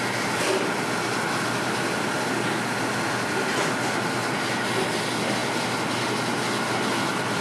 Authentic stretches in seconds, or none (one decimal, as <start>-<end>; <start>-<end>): 0.0-7.4